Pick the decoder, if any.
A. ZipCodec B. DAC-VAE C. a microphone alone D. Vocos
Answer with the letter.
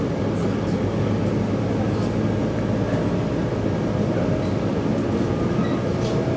C